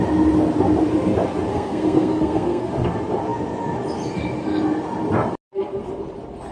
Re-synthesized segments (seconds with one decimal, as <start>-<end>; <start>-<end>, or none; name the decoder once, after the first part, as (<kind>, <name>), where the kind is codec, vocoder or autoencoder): 1.5-2.7 (codec, SNAC)